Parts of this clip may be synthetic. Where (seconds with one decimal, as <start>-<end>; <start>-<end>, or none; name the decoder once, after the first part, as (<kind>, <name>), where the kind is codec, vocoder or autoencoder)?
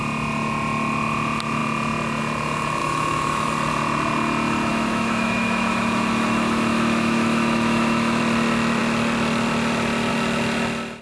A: 2.8-3.5 (autoencoder, DAC-VAE); 4.7-8.2